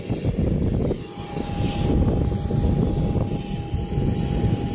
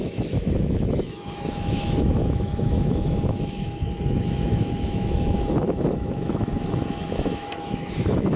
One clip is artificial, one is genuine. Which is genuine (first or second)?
first